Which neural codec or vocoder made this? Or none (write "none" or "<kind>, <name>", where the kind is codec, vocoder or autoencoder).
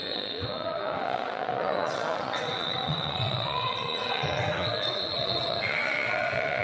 vocoder, WaveNeXt